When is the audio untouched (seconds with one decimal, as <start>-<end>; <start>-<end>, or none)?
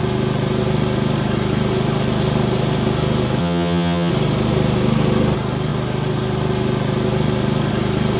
0.0-3.4; 4.1-8.2